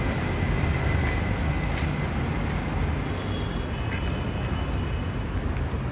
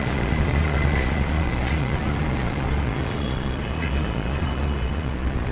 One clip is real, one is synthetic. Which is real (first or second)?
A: first